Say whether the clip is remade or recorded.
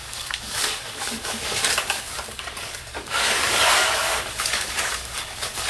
remade